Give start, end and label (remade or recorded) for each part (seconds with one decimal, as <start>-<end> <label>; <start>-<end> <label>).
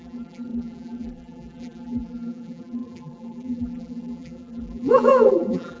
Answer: 0.0-5.8 remade